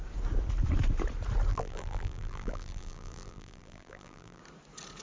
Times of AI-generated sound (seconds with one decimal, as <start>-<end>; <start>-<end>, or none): 1.5-4.4